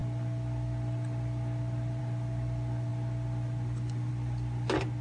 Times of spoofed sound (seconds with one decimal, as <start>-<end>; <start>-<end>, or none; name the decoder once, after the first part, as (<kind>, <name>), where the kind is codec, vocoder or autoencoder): none